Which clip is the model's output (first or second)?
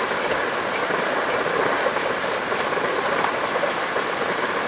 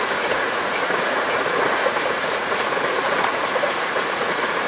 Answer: second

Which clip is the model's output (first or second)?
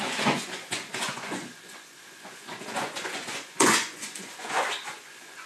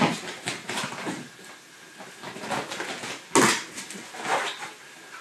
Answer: first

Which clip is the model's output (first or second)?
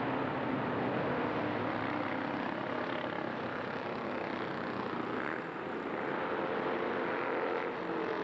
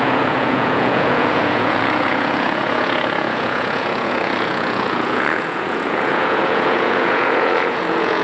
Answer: second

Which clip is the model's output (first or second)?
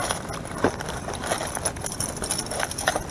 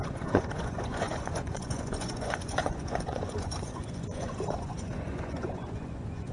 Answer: second